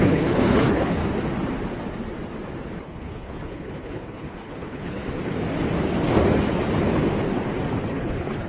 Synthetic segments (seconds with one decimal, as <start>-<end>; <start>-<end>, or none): 0.0-1.0; 2.8-5.0; 7.8-8.5